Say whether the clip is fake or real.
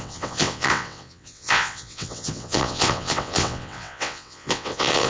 fake